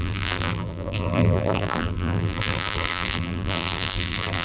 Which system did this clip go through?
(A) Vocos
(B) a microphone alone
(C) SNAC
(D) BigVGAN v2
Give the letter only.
D